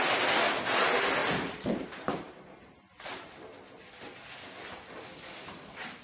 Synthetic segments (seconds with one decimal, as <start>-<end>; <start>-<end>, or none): 1.2-3.3